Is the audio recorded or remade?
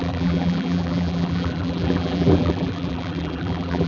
remade